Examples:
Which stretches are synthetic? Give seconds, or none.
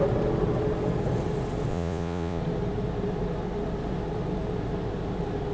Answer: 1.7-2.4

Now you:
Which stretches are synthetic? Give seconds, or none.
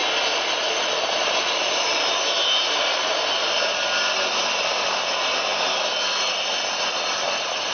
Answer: none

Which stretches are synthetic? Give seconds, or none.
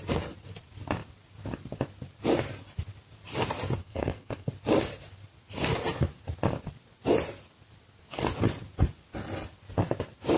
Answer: 3.8-4.5